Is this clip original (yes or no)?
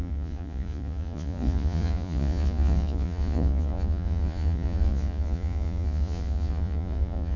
no